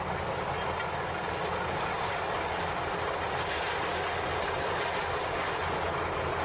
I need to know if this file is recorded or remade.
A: recorded